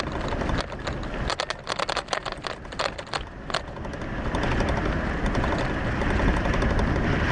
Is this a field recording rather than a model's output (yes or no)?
yes